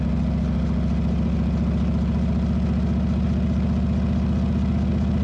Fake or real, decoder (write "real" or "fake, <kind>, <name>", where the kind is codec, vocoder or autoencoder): real